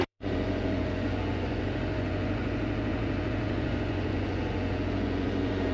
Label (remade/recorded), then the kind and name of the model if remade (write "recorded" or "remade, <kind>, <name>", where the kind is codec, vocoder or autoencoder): remade, vocoder, Vocos